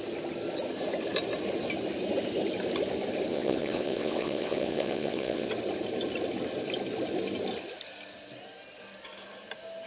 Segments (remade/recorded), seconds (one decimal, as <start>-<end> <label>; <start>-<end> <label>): 0.0-3.3 recorded; 3.3-5.5 remade; 5.5-9.9 recorded